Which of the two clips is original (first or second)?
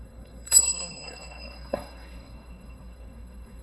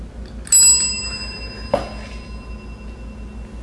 second